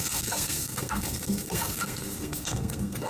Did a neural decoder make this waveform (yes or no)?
yes